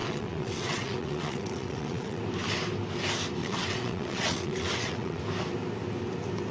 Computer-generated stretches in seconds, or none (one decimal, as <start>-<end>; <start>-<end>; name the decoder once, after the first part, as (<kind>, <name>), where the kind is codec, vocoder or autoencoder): 0.0-2.2 (vocoder, WaveNeXt); 3.4-5.2